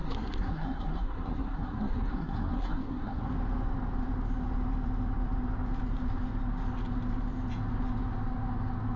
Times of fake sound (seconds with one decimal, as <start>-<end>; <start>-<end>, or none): 0.0-3.2

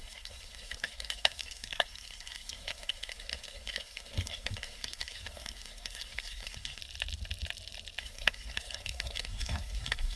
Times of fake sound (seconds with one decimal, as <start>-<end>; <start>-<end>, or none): 0.0-6.8; 8.0-10.2

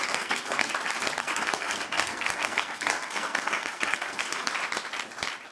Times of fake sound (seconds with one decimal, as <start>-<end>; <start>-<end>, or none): 0.0-0.7; 1.2-4.5